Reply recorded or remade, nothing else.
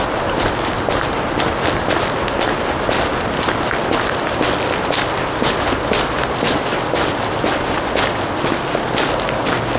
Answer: recorded